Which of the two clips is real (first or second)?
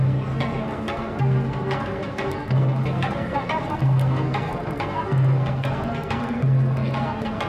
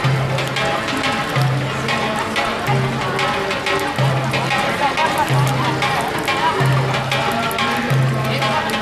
second